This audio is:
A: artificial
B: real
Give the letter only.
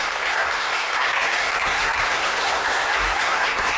A